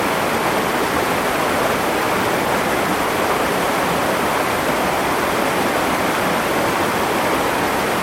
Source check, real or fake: real